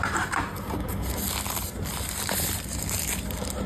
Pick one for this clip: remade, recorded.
recorded